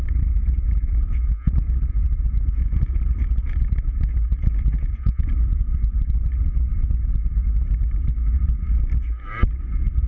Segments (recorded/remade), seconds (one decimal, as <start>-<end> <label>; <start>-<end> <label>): 0.0-0.4 recorded; 0.4-5.6 remade; 5.6-10.1 recorded